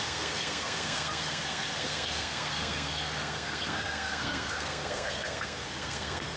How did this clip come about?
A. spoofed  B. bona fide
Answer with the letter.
A